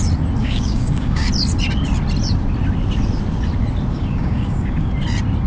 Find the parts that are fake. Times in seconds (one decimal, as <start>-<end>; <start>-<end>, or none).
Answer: 0.4-1.3; 3.9-4.9